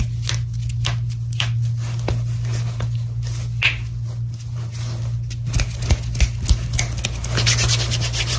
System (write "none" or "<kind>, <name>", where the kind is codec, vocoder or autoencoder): none